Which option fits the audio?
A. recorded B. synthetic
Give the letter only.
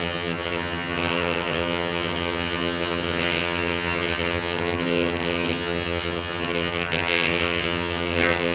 B